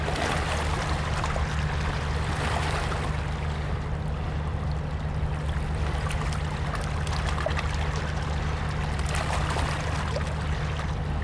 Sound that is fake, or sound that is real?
real